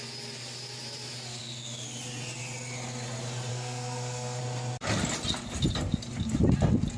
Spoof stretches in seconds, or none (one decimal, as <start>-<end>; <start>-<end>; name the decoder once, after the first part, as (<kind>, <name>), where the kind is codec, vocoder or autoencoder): 3.5-4.4 (codec, SNAC)